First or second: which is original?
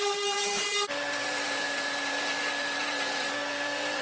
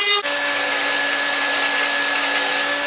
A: second